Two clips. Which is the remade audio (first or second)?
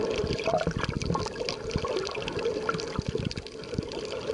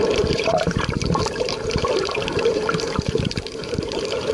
second